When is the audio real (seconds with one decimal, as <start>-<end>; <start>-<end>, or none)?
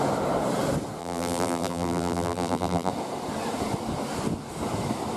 0.0-1.0; 2.9-5.2